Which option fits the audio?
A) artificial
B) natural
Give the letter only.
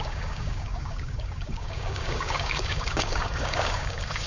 A